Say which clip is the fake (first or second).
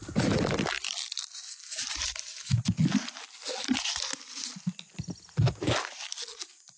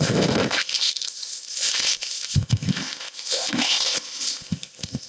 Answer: second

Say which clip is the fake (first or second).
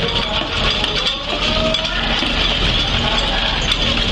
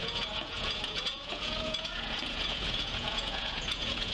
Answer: second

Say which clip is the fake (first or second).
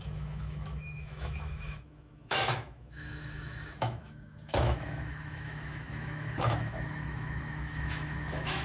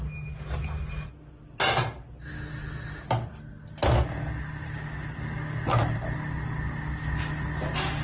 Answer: first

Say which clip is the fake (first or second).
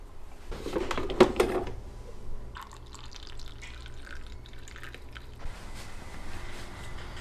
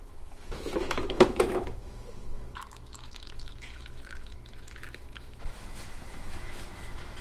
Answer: second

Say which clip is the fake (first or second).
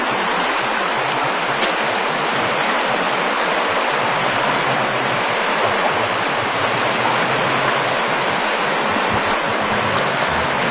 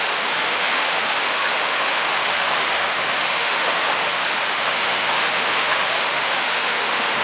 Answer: second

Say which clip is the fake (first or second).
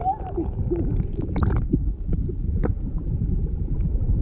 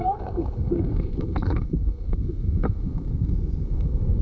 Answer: second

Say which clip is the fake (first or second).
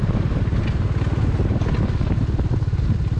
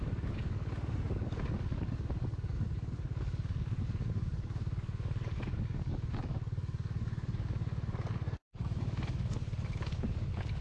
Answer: second